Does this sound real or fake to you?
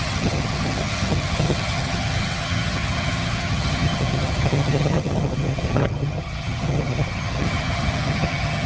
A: fake